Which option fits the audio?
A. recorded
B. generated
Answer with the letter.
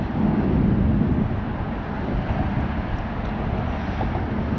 A